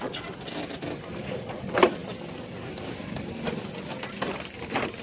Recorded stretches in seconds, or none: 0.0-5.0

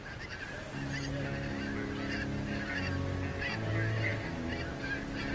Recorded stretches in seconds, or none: 0.0-5.3